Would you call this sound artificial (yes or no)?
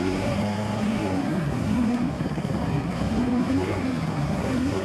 yes